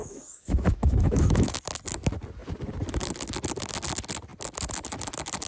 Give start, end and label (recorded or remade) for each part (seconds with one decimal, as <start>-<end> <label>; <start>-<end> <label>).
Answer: 0.0-1.5 remade; 1.5-5.5 recorded